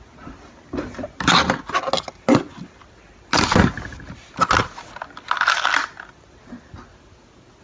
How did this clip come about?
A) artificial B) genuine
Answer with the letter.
B